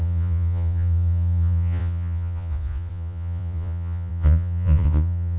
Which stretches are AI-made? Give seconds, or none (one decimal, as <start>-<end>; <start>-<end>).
0.0-5.4